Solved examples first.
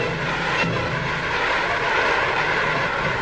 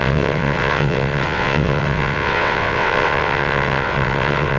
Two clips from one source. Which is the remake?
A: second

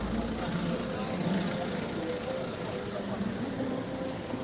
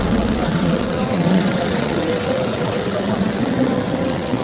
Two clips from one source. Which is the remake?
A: second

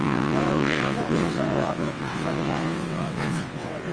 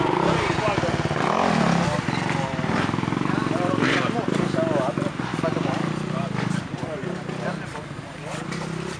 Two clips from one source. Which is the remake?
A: first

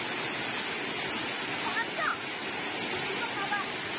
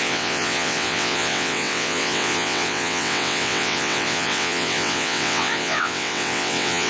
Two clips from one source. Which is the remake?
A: second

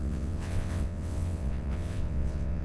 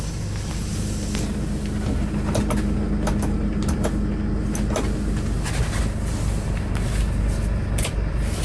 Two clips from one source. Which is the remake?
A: first